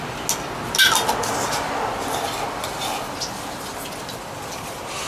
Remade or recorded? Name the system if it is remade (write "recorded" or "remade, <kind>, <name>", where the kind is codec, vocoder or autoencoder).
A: recorded